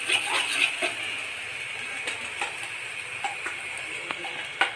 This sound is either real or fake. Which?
real